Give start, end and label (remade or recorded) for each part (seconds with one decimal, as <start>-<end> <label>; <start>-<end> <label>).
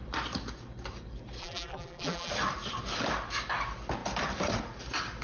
0.0-1.4 recorded; 1.4-2.3 remade; 2.3-5.2 recorded